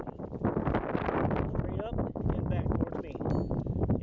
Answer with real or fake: real